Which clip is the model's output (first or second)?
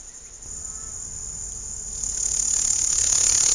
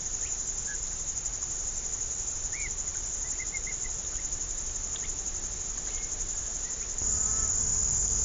second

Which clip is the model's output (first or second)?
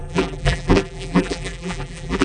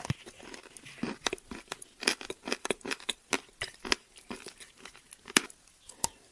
first